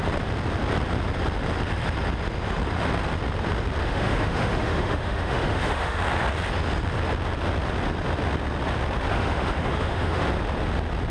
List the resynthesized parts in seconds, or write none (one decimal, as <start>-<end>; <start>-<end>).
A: 3.8-6.0; 9.1-10.2